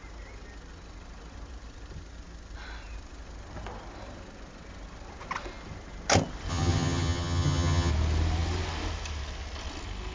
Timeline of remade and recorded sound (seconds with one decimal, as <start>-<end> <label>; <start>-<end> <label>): 0.0-6.5 recorded; 6.5-7.9 remade; 7.9-10.1 recorded